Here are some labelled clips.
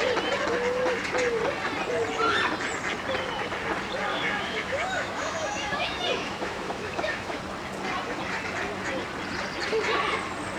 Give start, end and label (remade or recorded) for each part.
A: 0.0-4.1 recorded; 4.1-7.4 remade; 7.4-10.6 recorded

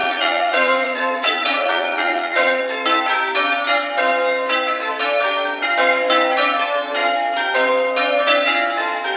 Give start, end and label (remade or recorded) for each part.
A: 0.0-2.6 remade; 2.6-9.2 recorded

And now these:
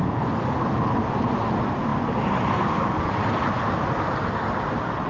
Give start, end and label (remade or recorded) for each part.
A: 0.0-5.1 recorded